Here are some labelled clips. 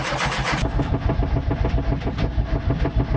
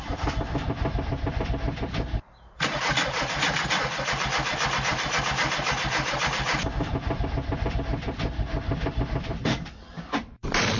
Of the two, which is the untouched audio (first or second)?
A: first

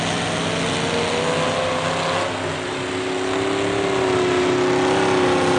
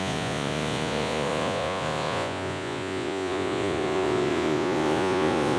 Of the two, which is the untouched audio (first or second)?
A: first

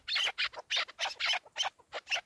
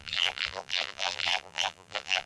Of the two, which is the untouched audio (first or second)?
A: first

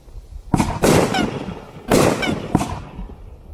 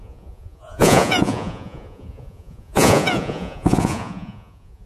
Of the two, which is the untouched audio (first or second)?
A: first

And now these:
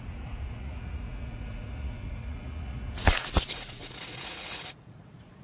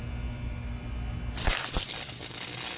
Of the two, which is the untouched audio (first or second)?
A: second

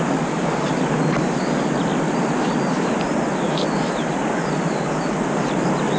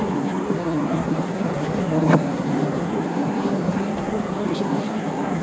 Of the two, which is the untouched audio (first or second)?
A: first